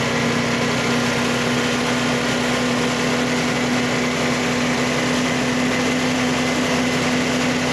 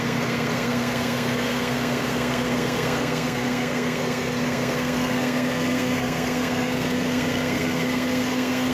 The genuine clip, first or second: first